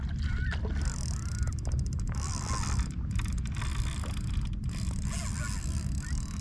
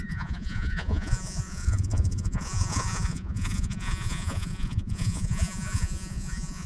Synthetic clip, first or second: second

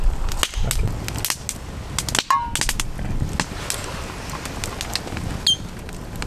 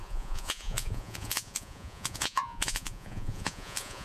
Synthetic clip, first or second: second